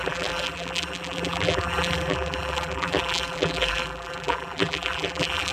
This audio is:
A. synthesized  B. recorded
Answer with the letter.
A